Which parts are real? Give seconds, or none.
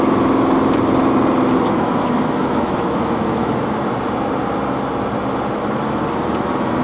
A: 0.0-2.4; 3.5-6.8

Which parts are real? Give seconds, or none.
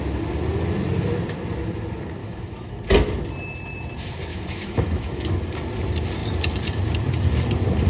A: 0.0-2.2; 2.7-4.3; 5.3-7.9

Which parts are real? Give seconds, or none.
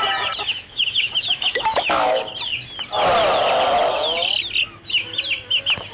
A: 0.0-0.5; 2.2-5.9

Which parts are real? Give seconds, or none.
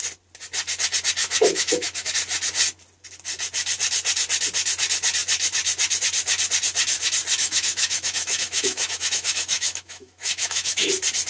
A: 0.0-1.2; 2.1-7.4; 10.9-11.3